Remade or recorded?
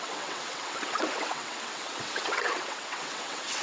remade